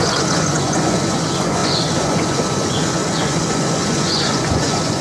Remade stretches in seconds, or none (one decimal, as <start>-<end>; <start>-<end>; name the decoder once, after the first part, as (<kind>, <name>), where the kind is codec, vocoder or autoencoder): 0.0-5.0 (vocoder, Vocos)